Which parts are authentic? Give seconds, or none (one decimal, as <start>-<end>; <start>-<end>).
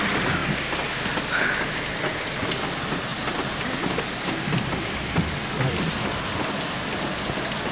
0.0-7.7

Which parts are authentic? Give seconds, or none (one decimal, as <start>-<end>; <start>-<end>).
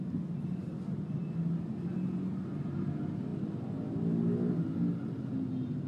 0.0-5.9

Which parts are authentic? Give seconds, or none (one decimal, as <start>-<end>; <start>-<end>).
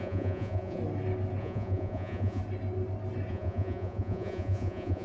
0.8-1.4; 2.4-3.3